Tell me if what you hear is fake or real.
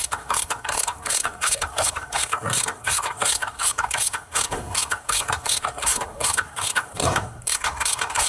fake